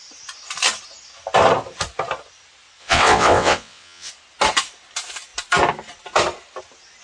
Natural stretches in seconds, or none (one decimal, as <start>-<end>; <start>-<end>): 0.0-2.8; 4.1-7.0